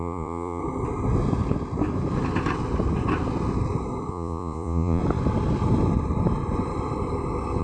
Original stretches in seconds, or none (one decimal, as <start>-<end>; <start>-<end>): 0.6-4.1; 5.0-7.6